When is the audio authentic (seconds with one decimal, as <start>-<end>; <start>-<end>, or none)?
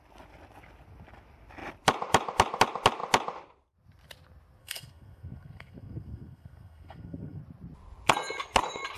0.0-4.6; 7.4-9.0